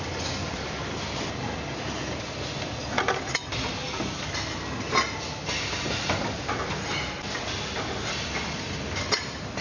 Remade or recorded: recorded